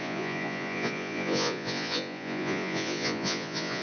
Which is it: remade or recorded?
remade